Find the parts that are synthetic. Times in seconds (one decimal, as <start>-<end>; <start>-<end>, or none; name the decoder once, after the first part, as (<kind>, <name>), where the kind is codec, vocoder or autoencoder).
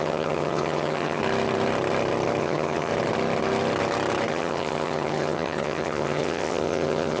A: 0.0-1.2 (vocoder, HiFi-GAN); 2.4-2.9; 4.3-7.2